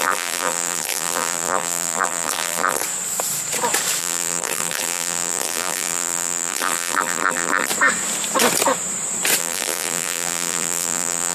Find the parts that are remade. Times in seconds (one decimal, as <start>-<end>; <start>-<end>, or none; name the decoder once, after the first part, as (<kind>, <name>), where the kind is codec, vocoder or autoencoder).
0.0-2.8 (vocoder, BigVGAN v2); 4.0-7.7; 9.4-11.3